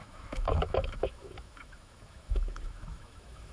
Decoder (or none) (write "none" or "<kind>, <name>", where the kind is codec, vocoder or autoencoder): autoencoder, DAC-VAE